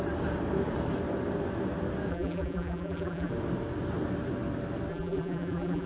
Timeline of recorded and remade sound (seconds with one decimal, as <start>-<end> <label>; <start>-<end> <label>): 0.0-2.1 recorded; 2.1-3.3 remade; 3.3-4.9 recorded; 4.9-5.9 remade